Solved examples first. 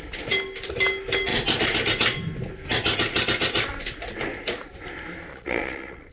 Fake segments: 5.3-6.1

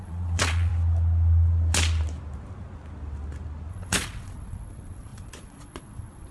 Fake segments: 0.0-0.7; 3.7-6.3

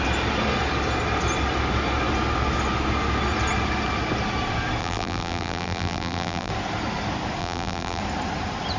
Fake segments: 4.8-6.5; 7.4-8.0

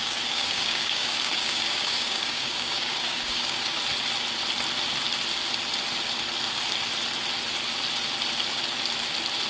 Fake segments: 0.0-3.8